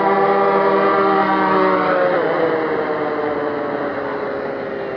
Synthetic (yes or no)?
no